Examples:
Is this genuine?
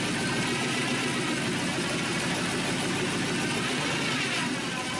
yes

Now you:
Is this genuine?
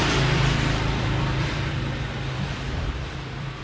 no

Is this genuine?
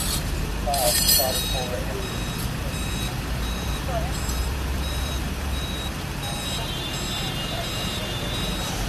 no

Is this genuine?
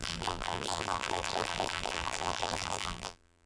no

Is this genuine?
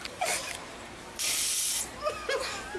no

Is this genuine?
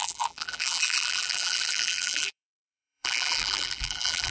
no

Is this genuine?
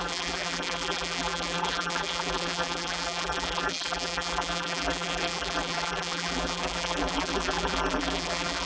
no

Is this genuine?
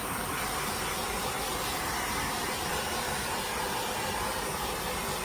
no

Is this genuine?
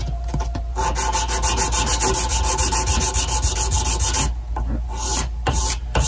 yes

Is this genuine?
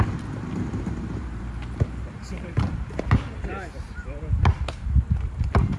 no